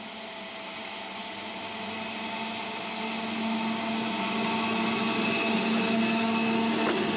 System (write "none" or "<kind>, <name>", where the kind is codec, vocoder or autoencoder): none